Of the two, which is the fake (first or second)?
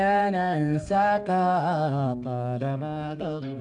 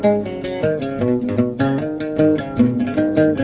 first